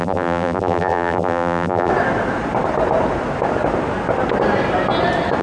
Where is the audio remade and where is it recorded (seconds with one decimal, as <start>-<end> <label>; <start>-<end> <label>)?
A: 0.0-1.9 remade; 1.9-5.4 recorded